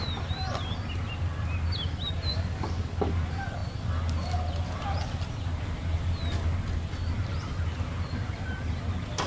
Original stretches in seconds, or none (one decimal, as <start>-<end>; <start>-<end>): 0.0-2.3; 3.1-9.3